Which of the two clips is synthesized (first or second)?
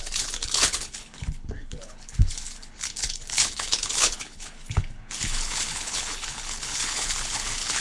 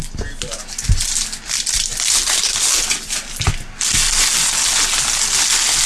first